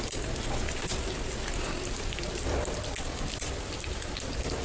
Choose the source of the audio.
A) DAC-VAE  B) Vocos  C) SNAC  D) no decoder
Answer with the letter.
D